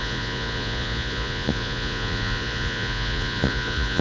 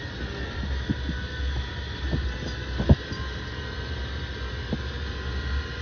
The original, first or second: second